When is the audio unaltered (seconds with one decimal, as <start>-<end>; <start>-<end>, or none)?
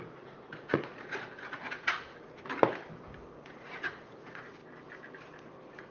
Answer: 2.1-3.4; 4.6-5.5